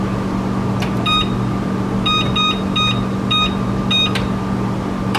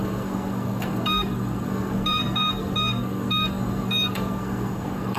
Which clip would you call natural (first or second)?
first